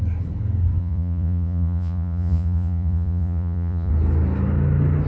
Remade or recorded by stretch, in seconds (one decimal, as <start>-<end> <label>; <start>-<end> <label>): 0.0-0.8 recorded; 0.8-3.9 remade; 3.9-5.1 recorded